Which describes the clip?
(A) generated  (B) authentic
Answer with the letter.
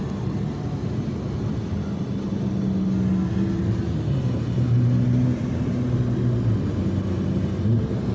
B